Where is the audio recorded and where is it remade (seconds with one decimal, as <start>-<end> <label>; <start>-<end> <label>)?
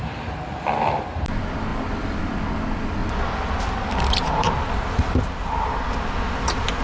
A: 0.0-1.7 recorded; 1.7-2.2 remade; 2.2-3.0 recorded; 3.0-5.2 remade; 5.2-6.8 recorded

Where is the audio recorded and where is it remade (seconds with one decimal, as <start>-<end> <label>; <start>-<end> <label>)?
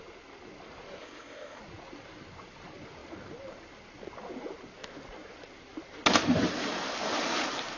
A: 0.0-1.0 recorded; 1.0-1.6 remade; 1.6-7.8 recorded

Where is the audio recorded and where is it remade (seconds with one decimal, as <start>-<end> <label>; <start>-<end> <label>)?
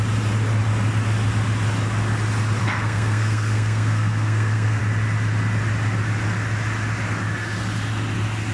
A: 0.0-2.6 recorded; 2.6-4.8 remade; 4.8-8.5 recorded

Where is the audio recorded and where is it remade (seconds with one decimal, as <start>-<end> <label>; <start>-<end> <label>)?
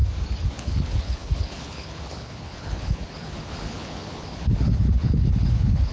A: 0.0-0.5 recorded; 0.5-5.9 remade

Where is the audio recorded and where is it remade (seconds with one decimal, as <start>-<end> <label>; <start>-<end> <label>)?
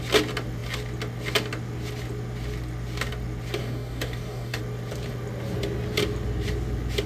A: 0.0-3.6 recorded; 3.6-4.6 remade; 4.6-7.1 recorded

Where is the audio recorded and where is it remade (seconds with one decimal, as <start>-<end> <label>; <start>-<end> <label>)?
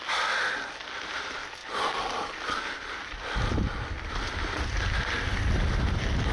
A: 0.0-6.3 recorded